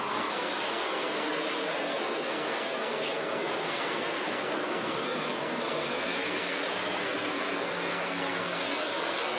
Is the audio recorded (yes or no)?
no